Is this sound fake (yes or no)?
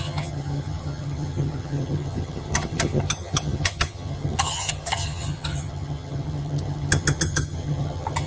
yes